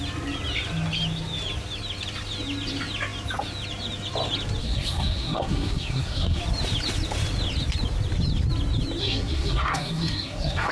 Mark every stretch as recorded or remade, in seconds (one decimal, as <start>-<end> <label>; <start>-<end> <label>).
0.0-4.6 recorded; 4.6-6.4 remade; 6.4-9.0 recorded; 9.0-10.7 remade